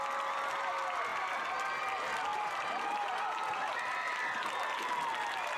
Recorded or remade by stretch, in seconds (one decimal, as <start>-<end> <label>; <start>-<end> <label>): 0.0-2.3 recorded; 2.3-4.1 remade; 4.1-5.6 recorded